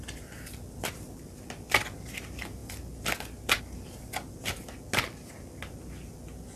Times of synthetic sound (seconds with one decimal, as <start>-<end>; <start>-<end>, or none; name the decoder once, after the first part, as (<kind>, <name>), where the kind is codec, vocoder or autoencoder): none